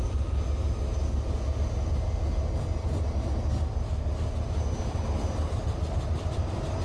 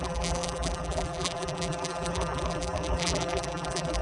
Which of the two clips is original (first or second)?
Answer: first